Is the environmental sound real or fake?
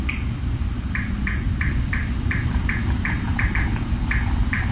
fake